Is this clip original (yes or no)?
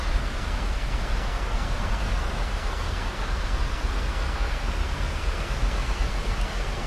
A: no